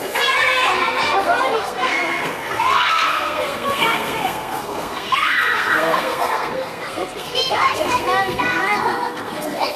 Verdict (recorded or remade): remade